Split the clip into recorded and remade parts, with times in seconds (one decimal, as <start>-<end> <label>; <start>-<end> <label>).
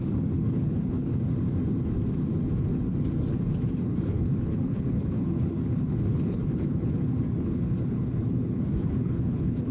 0.0-1.1 remade; 1.1-3.9 recorded; 3.9-9.7 remade